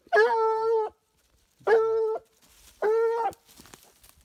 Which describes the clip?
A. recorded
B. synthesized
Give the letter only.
A